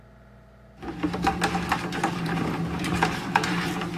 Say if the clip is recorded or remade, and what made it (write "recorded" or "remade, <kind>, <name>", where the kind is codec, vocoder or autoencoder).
recorded